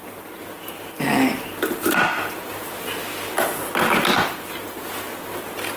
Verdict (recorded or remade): recorded